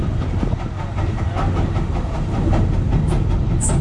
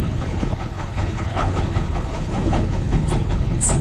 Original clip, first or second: first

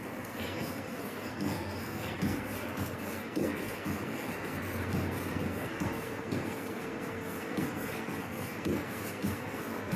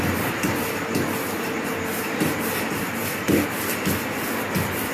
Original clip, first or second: second